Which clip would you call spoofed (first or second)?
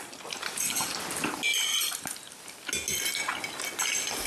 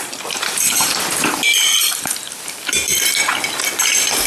second